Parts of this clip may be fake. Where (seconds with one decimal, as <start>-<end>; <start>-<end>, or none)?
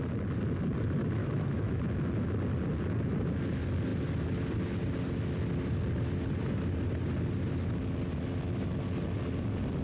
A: 1.2-1.8